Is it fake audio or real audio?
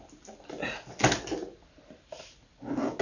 real